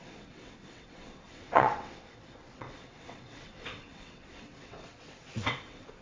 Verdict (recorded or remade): remade